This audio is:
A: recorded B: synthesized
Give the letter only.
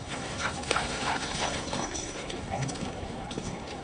B